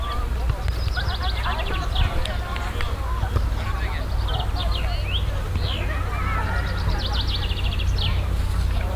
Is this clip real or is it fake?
real